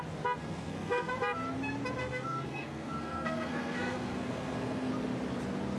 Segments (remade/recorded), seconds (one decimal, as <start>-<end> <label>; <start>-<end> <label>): 0.0-0.4 recorded; 0.4-1.1 remade; 1.1-2.0 recorded; 2.0-4.9 remade; 4.9-5.8 recorded